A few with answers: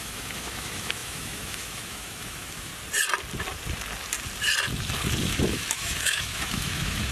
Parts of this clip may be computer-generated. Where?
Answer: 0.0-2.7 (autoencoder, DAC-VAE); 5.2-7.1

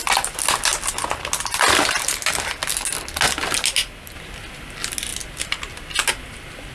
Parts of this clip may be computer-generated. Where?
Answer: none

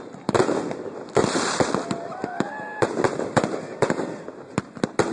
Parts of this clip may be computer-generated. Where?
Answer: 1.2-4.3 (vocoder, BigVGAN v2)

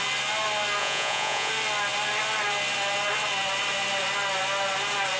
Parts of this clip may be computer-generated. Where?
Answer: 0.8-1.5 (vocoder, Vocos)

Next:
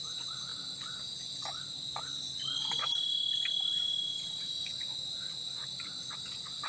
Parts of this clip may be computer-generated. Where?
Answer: 0.0-0.5 (vocoder, BigVGAN v2); 3.7-6.7

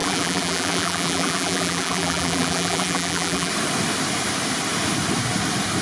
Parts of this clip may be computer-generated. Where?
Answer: 0.0-3.5 (vocoder, BigVGAN v2)